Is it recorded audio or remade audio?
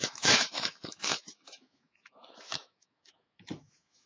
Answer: remade